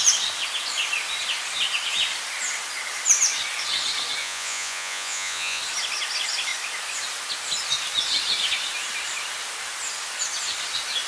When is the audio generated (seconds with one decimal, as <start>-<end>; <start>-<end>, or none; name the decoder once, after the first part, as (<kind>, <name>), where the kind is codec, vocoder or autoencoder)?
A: 4.2-5.6 (vocoder, Vocos)